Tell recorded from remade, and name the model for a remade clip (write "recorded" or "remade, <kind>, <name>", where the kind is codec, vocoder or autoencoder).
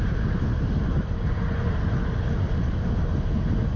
recorded